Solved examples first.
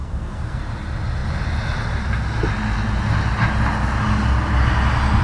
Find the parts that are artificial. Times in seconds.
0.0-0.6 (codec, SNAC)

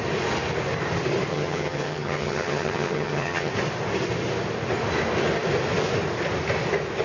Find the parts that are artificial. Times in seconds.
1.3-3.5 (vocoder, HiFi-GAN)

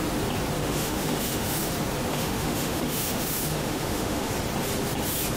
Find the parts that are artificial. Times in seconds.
0.6-1.7 (autoencoder, DAC-VAE); 2.1-4.3